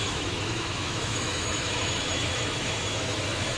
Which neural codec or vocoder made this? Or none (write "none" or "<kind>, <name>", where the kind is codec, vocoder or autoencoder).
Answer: autoencoder, DAC-VAE